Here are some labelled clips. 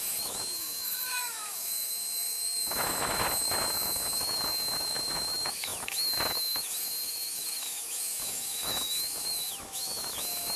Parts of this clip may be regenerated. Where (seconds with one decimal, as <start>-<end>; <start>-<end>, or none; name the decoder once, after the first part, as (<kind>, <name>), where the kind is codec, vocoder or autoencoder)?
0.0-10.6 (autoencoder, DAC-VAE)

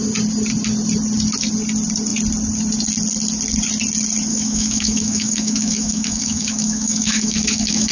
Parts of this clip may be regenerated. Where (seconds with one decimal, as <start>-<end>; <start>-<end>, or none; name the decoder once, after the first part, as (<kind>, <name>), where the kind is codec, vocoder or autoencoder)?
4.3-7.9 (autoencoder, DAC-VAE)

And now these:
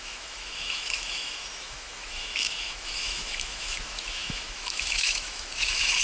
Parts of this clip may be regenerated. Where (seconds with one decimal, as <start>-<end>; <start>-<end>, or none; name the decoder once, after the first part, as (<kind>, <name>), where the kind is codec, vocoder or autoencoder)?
0.0-6.0 (autoencoder, DAC-VAE)

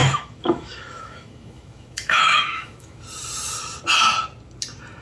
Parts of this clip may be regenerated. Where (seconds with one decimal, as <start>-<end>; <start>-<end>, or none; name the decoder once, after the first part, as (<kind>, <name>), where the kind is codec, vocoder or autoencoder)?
0.0-3.0 (autoencoder, DAC-VAE)

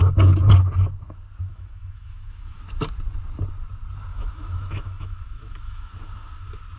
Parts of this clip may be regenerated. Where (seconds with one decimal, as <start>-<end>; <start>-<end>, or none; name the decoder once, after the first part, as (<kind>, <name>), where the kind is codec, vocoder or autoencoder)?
1.5-2.6 (autoencoder, DAC-VAE); 4.1-5.9